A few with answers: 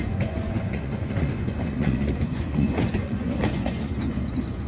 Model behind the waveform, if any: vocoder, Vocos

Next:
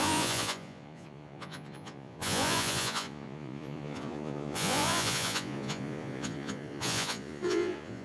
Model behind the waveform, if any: vocoder, Vocos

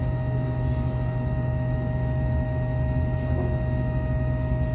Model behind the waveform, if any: none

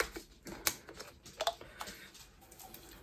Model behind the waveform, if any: none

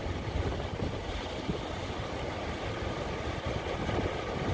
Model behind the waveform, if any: none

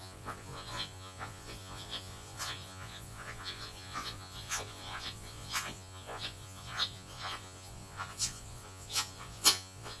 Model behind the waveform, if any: vocoder, Vocos